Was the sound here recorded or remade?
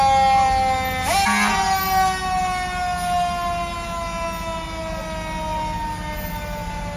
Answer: recorded